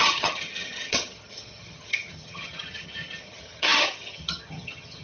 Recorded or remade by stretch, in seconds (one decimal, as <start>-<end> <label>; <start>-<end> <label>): 0.0-5.0 remade